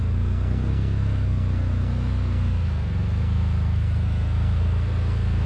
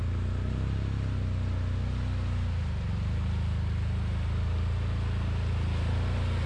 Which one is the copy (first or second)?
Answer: first